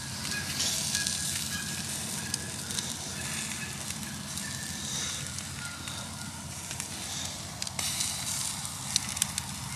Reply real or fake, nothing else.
real